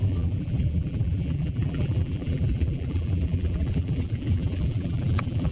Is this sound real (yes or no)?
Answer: no